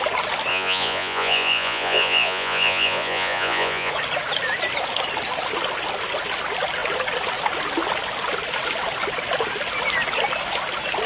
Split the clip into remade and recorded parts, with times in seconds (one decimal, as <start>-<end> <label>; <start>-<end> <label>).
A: 0.0-0.5 recorded; 0.5-3.9 remade; 3.9-11.1 recorded